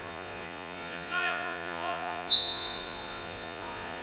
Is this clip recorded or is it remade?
remade